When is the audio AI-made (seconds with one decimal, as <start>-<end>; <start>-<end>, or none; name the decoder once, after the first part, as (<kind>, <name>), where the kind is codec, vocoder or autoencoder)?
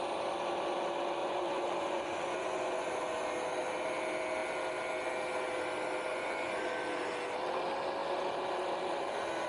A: 1.2-3.3 (vocoder, Vocos); 6.1-6.6